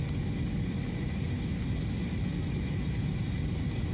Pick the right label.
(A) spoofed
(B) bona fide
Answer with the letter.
B